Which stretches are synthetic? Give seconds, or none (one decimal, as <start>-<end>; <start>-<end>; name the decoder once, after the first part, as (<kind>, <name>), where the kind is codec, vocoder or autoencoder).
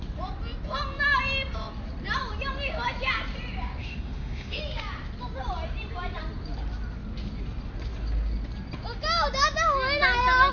3.8-4.6 (autoencoder, DAC-VAE)